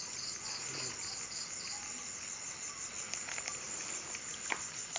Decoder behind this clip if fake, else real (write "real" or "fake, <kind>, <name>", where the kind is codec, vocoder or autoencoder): real